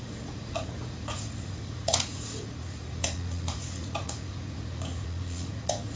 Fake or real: fake